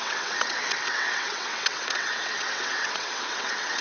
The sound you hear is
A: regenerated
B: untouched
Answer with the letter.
A